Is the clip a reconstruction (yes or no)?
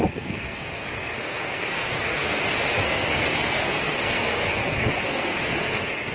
yes